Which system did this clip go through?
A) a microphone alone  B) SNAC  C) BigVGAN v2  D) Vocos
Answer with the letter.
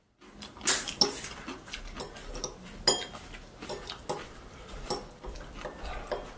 A